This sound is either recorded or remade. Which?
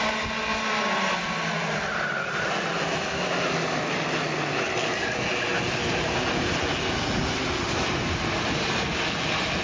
recorded